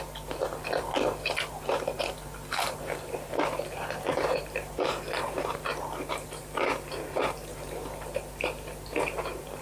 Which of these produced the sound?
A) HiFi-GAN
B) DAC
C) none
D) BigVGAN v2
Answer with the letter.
D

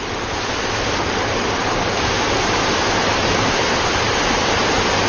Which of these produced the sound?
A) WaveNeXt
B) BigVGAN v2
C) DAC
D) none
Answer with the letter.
D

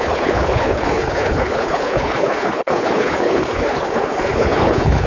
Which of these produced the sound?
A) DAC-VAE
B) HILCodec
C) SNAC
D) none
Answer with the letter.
B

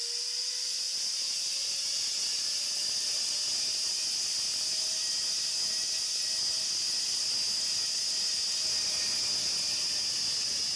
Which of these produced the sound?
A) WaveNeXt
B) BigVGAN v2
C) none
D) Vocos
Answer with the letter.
C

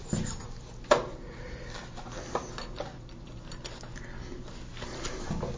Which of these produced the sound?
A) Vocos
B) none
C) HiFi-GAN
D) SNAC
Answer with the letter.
B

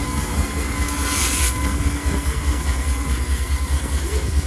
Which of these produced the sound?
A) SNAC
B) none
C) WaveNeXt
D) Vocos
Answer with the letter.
A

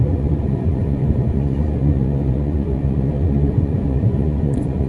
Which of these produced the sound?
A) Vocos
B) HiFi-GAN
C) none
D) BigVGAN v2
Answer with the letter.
A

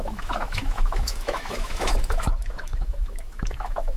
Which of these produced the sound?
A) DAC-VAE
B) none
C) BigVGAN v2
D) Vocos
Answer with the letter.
A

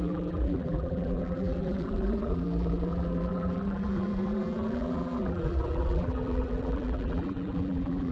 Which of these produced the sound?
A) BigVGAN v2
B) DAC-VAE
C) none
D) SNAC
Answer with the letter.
A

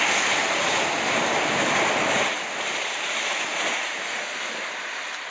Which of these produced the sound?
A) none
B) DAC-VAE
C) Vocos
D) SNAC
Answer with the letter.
A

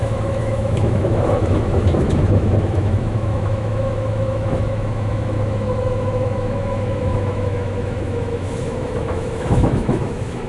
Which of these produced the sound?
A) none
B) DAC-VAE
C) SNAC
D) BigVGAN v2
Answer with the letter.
B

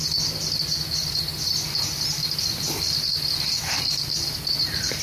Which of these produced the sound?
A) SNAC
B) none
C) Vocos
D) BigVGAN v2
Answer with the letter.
B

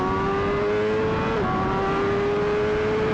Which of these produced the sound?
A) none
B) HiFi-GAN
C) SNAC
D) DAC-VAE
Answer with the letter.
A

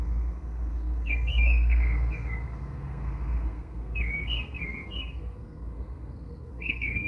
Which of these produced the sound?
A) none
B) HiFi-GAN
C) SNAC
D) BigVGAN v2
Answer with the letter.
C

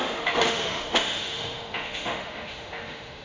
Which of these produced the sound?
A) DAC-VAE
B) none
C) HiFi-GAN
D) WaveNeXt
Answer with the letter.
A